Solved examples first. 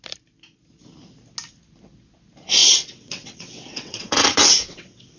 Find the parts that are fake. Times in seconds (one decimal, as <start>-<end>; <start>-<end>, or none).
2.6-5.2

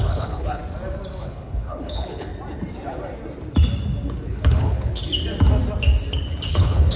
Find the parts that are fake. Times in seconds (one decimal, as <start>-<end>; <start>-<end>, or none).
0.0-0.6; 1.2-2.3; 4.3-5.0; 6.5-7.0

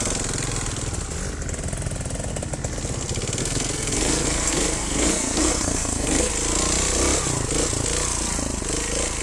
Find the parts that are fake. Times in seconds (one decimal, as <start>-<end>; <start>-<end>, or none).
3.4-6.3

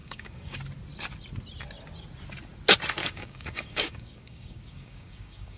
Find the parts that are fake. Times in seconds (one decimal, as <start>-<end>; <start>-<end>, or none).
0.0-0.6; 3.0-5.6

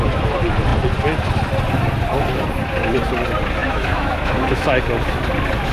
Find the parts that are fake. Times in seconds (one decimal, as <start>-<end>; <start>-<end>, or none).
3.6-4.8

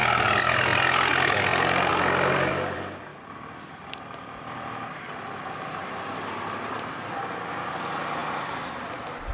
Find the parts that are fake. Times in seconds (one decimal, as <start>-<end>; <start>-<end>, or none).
3.1-7.1; 8.2-8.7

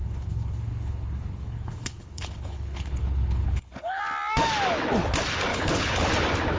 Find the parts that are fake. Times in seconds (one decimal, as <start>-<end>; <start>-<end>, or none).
0.0-4.0; 5.5-6.1

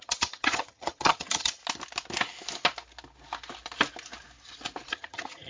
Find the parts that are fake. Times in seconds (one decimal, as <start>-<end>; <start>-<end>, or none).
0.0-1.6; 4.9-5.5